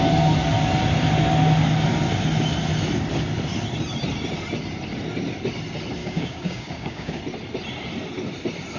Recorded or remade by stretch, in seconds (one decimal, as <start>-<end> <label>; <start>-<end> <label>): 0.0-6.0 recorded; 6.0-7.2 remade; 7.2-8.8 recorded